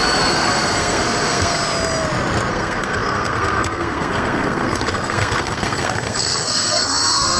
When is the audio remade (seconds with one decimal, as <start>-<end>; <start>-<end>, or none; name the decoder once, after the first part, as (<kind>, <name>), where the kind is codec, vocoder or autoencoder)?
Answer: 0.0-1.5 (codec, SNAC); 2.5-7.4